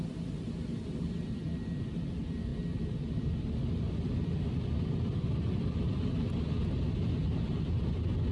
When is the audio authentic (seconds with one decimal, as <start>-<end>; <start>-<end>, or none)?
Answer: 0.0-8.3